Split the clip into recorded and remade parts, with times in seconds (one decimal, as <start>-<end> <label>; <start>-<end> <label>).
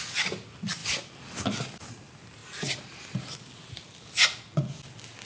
0.0-5.3 recorded